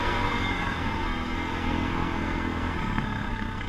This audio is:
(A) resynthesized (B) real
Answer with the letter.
A